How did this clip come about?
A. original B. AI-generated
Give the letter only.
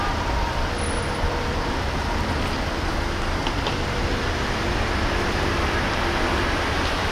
B